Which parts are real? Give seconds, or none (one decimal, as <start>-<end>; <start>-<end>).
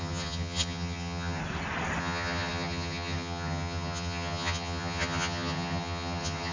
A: 1.4-2.0